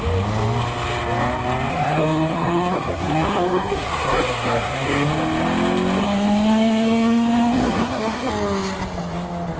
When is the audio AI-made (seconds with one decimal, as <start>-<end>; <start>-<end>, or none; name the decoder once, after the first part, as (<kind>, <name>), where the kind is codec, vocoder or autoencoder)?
1.7-5.1 (codec, SNAC); 6.0-8.3